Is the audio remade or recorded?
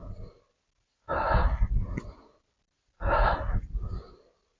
recorded